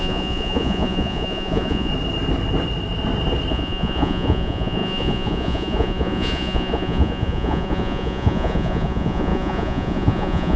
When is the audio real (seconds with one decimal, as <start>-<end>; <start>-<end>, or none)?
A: 1.9-3.5